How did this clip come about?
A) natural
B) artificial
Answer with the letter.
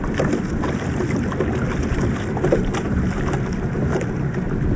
A